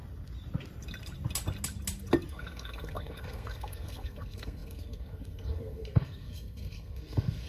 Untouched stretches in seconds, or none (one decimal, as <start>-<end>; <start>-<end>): 0.0-2.3